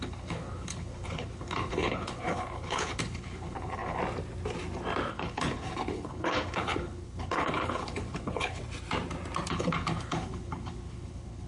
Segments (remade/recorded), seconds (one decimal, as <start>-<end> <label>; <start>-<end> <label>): 0.0-4.0 remade; 4.0-5.1 recorded; 5.1-8.6 remade; 8.6-9.5 recorded; 9.5-11.5 remade